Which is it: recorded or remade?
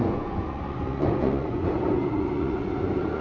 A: remade